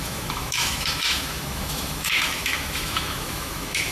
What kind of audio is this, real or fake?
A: fake